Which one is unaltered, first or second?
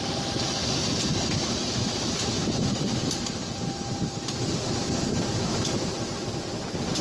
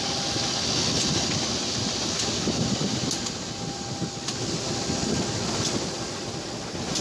second